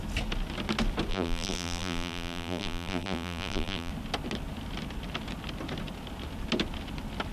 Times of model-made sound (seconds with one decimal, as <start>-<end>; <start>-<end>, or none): 1.1-3.9